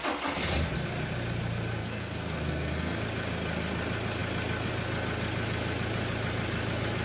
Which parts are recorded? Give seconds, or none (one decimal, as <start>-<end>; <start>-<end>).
0.0-1.8; 3.0-7.0